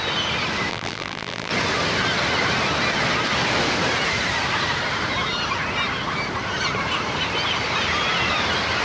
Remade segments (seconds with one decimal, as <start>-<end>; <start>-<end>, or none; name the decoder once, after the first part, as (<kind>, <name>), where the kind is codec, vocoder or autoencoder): 0.7-1.5 (vocoder, BigVGAN v2)